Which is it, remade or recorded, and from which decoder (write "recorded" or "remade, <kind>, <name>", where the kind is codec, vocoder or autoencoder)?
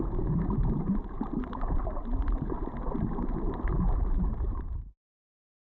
recorded